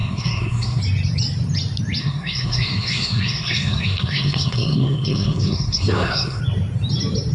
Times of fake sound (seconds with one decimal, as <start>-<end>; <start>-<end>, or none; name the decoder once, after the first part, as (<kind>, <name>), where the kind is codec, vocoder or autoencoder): 0.0-0.8 (codec, SNAC); 2.0-6.4